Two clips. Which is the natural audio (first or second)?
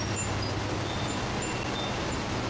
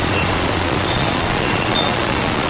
first